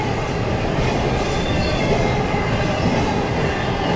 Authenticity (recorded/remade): recorded